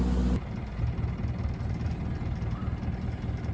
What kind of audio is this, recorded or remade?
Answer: recorded